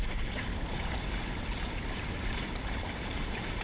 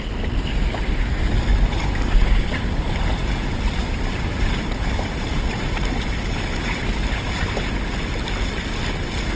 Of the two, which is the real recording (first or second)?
second